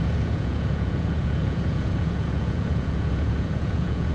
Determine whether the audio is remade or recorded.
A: remade